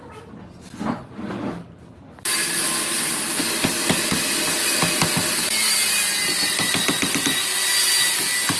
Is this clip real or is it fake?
real